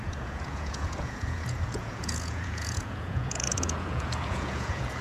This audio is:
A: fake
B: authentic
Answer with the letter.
A